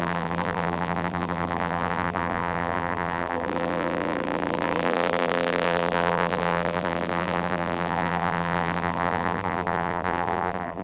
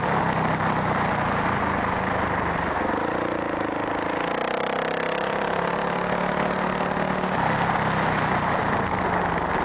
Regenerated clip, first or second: first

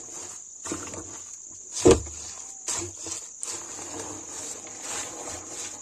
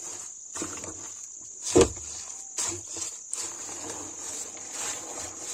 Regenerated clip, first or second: second